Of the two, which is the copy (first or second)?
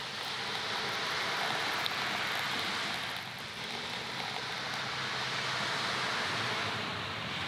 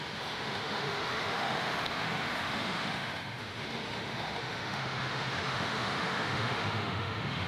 second